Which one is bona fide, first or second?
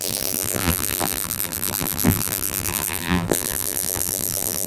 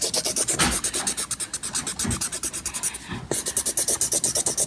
second